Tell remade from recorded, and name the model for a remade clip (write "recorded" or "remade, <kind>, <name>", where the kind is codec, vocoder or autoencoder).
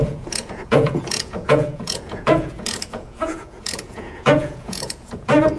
remade, vocoder, Vocos